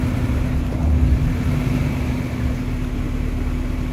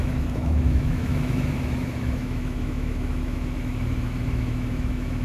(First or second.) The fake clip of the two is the second